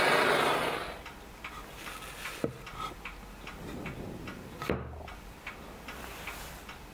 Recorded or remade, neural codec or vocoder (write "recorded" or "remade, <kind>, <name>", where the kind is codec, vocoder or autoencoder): recorded